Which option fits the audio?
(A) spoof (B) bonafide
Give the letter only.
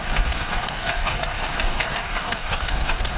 A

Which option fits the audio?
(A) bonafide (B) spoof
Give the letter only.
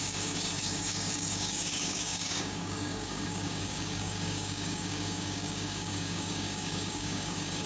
B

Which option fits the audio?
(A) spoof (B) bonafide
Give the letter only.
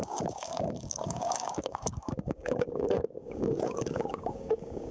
A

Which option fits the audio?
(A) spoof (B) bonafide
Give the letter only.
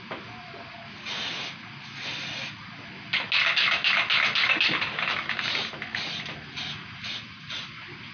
B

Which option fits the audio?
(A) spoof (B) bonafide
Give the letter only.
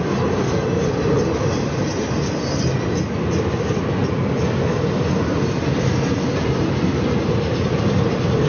B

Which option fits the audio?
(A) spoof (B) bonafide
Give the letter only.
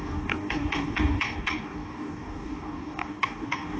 A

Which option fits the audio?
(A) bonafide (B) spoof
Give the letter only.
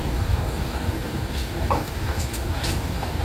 B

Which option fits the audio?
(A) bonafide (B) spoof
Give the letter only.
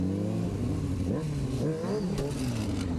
A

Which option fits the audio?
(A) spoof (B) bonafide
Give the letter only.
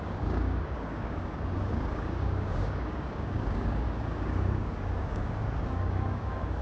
A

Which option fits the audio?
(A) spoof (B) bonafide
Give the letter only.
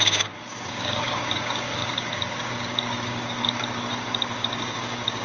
A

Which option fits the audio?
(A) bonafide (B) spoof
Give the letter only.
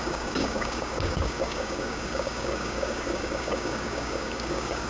B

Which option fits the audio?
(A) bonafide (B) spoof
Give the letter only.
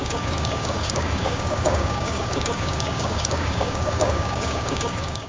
B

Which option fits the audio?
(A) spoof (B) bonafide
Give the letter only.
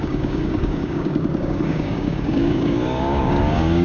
A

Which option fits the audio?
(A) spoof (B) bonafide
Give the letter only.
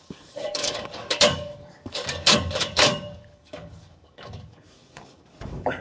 A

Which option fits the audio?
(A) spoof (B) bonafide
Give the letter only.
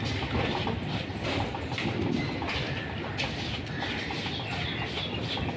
B